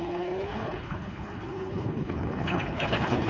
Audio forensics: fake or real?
fake